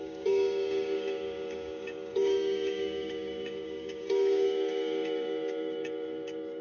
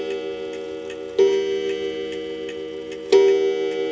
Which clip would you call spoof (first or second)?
first